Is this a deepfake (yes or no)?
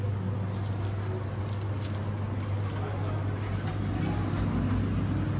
no